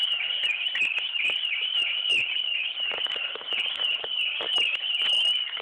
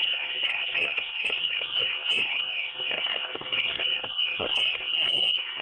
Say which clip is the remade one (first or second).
second